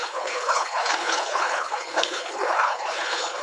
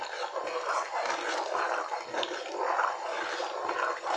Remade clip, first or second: first